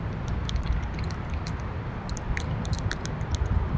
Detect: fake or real real